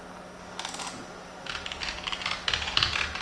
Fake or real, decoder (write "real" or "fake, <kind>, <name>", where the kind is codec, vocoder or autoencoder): real